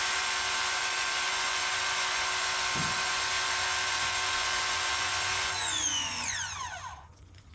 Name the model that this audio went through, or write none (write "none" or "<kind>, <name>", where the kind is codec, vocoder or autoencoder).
vocoder, Vocos